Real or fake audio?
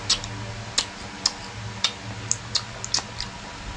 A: real